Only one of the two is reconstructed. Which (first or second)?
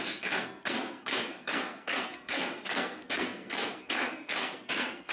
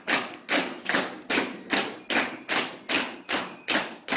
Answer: first